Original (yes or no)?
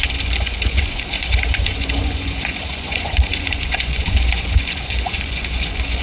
no